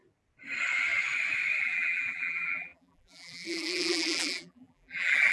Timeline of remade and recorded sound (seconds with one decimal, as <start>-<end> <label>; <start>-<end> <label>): 0.0-1.6 recorded; 1.6-5.3 remade

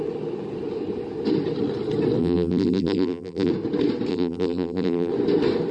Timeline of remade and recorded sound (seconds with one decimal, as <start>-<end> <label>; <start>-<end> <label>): 0.0-2.2 recorded; 2.2-3.5 remade; 3.5-4.1 recorded; 4.1-5.1 remade; 5.1-5.7 recorded

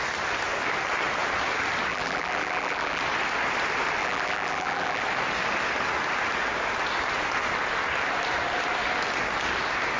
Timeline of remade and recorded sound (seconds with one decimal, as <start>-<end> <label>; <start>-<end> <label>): 0.0-1.9 recorded; 1.9-3.0 remade; 3.0-4.0 recorded; 4.0-5.0 remade; 5.0-10.0 recorded

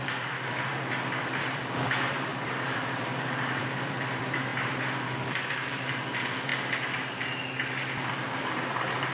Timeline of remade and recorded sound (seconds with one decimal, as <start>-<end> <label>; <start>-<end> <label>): 0.0-6.5 remade; 6.5-8.1 recorded; 8.1-9.1 remade

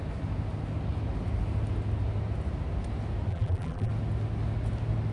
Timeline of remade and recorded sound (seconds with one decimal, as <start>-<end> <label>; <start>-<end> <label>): 0.0-3.3 recorded; 3.3-3.9 remade; 3.9-5.1 recorded

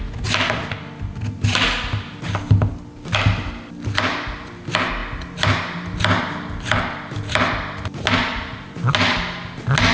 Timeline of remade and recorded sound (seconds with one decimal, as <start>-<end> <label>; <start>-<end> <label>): 0.0-9.9 recorded

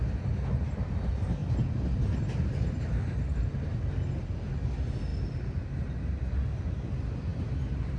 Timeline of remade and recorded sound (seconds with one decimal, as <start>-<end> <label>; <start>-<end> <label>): 0.0-5.1 recorded; 5.1-5.7 remade; 5.7-8.0 recorded

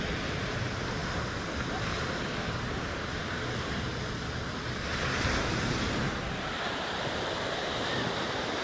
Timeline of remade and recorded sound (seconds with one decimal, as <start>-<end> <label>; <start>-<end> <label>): 0.0-4.9 recorded; 4.9-8.6 remade